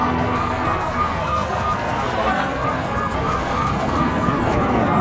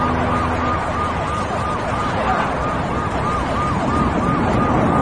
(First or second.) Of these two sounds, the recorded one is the second